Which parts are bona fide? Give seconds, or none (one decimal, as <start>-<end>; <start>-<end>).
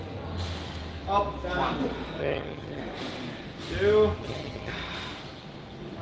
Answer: 0.0-2.2; 2.8-4.2; 4.7-6.0